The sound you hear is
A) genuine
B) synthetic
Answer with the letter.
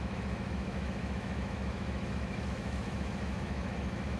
B